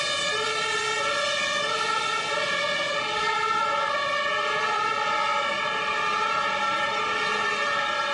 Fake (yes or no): yes